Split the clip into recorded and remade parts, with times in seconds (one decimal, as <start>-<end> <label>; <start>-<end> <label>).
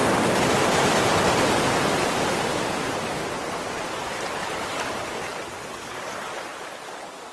0.0-0.5 remade; 0.5-4.0 recorded; 4.0-5.1 remade; 5.1-7.3 recorded